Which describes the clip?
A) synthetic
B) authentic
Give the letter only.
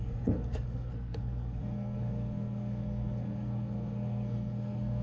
A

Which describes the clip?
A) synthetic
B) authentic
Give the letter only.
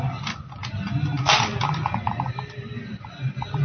B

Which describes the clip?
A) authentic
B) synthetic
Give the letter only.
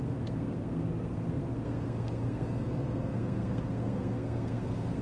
B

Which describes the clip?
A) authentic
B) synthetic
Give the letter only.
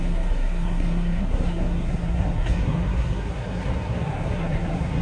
B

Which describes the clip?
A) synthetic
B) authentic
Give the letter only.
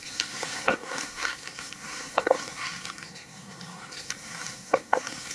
A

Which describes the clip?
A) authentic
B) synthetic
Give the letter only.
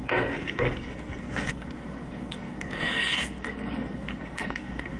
B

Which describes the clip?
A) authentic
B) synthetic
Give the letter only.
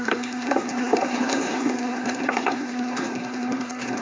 B